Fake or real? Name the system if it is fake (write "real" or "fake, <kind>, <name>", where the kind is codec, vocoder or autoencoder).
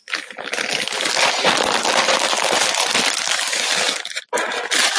real